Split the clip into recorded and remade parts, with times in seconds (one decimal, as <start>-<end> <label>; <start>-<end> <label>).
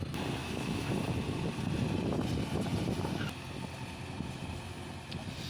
0.0-0.4 recorded; 0.4-0.9 remade; 0.9-5.5 recorded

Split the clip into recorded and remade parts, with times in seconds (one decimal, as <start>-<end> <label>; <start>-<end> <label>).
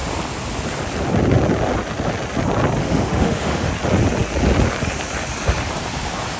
0.0-2.8 recorded; 2.8-3.7 remade; 3.7-6.4 recorded